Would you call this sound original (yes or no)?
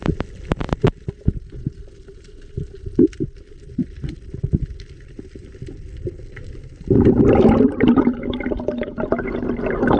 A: no